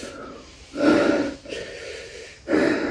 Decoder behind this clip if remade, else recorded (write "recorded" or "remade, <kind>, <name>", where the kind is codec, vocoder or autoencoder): recorded